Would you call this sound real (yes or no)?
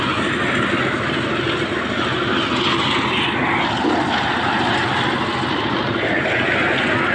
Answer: yes